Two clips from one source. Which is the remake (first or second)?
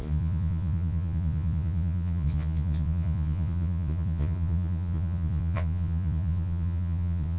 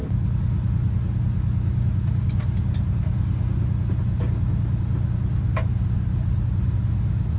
first